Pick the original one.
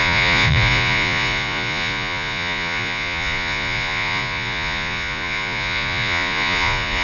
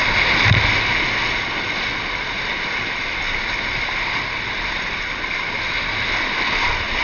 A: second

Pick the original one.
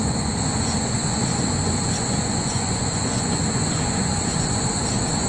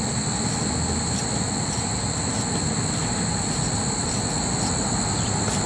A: second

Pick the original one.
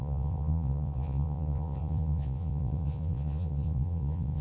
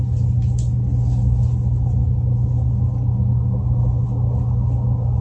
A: second